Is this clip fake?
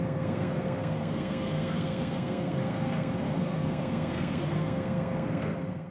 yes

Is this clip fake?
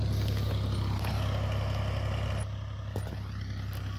no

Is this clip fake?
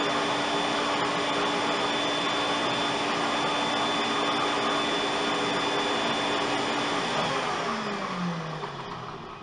no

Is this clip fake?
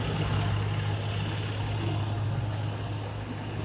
no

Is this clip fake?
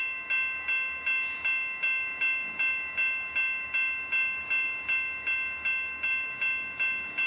no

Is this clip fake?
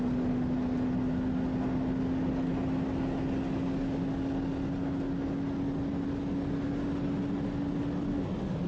no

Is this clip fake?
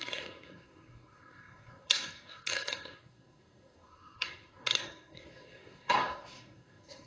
yes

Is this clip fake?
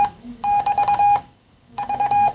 yes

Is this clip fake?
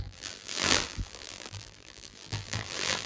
yes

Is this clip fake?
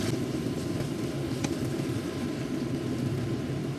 no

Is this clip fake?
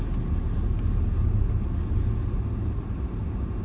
no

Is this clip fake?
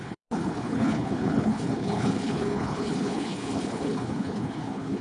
yes